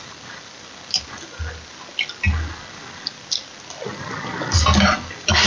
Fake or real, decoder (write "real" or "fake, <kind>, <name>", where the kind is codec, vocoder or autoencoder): real